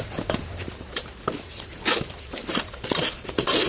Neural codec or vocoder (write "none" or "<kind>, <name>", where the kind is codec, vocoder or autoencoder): vocoder, BigVGAN v2